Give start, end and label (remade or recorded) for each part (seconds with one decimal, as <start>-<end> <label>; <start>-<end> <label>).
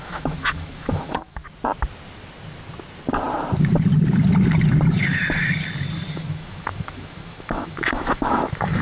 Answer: 0.0-1.4 remade; 1.4-6.1 recorded; 6.1-8.8 remade